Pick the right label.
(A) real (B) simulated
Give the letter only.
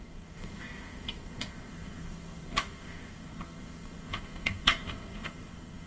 B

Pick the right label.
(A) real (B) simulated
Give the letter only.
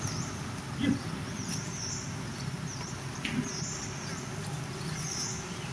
A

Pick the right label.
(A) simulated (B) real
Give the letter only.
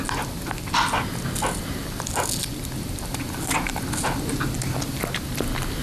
B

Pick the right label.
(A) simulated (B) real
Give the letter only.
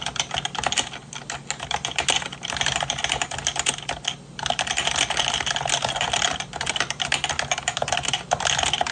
B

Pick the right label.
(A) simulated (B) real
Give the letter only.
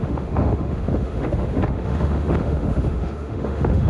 A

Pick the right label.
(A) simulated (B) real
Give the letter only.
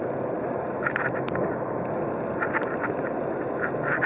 B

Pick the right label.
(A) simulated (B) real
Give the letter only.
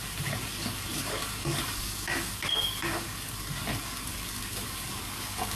A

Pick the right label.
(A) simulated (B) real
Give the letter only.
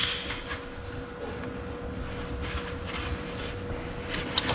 B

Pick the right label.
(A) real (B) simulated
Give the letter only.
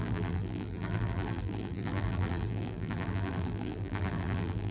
B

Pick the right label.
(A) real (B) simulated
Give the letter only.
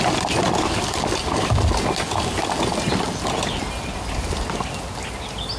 A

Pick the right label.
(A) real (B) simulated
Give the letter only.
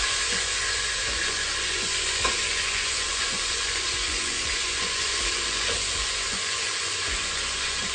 B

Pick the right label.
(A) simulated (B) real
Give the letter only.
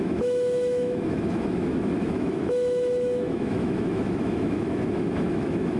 A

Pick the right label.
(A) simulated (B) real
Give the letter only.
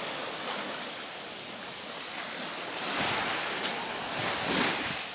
B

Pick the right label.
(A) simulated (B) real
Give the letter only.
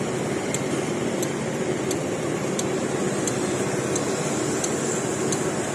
B